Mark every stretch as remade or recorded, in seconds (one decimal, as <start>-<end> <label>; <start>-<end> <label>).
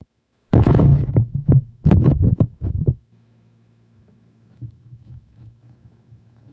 0.0-6.5 remade